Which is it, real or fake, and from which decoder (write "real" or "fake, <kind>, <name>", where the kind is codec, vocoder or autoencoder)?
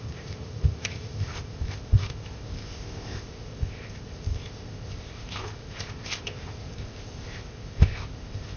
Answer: fake, codec, ZipCodec